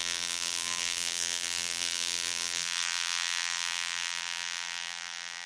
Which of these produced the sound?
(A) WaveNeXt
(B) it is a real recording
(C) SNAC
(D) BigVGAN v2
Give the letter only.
D